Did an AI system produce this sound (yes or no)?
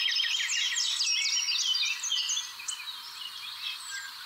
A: no